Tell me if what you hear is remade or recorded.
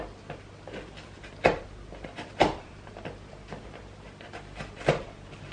recorded